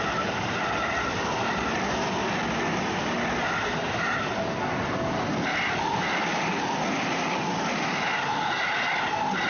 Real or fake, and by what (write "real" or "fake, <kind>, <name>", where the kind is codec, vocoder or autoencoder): real